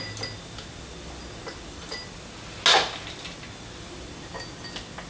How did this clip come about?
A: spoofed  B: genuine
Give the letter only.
B